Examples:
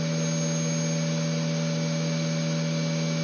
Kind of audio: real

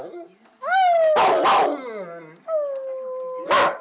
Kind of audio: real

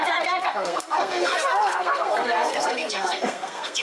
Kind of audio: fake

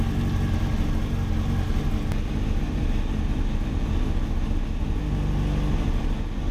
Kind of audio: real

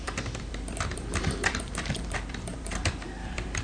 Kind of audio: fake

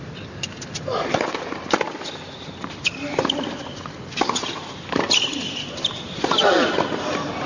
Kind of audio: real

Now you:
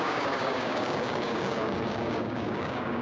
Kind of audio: fake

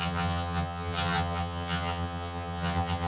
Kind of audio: fake